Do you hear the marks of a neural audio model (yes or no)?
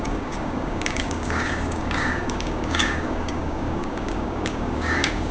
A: yes